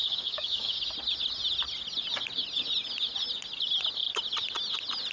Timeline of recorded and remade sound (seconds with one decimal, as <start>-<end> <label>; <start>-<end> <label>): 0.0-0.8 remade; 0.8-5.1 recorded